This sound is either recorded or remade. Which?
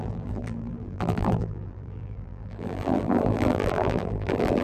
remade